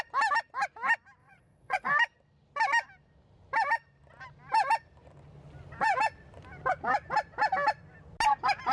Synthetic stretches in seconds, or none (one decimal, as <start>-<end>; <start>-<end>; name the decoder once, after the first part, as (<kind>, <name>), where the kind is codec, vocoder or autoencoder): 1.2-1.9 (vocoder, Vocos)